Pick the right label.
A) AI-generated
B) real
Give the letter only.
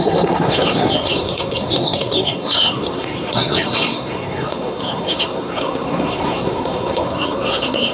A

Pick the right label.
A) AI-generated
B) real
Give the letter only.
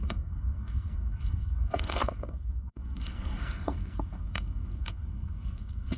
A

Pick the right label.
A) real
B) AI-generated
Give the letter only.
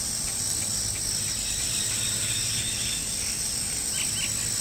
A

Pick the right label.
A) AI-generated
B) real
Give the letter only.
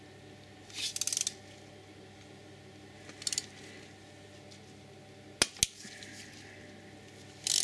B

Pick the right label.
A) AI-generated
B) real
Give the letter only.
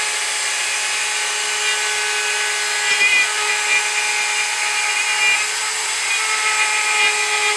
B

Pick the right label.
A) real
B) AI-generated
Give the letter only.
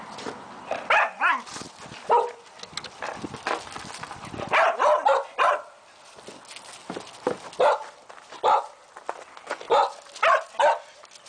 A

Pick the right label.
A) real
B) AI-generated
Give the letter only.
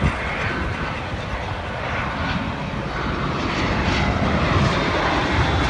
A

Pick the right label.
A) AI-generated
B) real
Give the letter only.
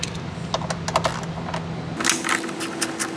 B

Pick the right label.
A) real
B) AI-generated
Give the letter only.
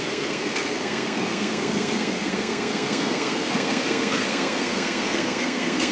B